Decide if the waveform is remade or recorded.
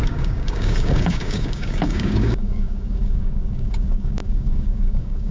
remade